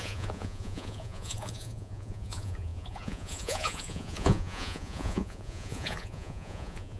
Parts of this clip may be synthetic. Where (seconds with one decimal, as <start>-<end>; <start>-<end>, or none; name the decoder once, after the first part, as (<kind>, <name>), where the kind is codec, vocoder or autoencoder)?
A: 0.0-7.0 (vocoder, Vocos)